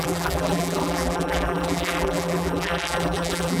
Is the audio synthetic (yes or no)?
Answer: yes